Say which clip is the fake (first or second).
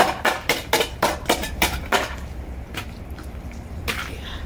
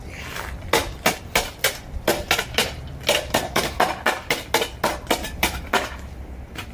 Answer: first